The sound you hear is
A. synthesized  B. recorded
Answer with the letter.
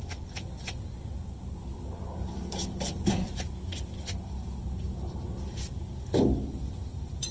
A